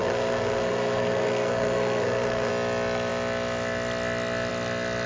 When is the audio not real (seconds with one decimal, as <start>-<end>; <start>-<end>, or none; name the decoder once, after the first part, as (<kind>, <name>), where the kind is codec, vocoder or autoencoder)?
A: 0.0-2.5 (codec, SNAC)